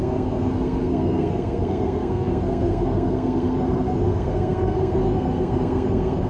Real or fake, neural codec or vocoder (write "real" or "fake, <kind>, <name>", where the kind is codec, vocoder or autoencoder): fake, codec, SNAC